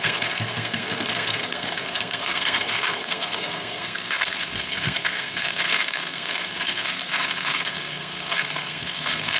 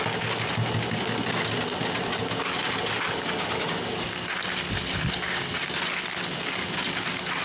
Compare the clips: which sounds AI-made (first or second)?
first